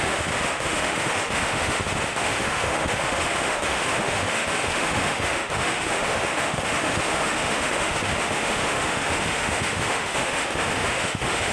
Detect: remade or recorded remade